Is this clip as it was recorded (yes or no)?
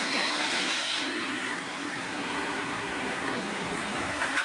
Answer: no